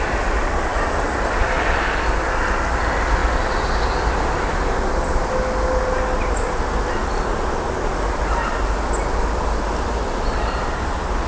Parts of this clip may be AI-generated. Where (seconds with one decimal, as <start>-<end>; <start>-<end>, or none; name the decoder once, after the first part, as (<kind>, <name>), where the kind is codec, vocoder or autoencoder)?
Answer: none